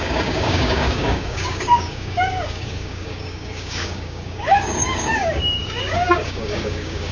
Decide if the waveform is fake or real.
fake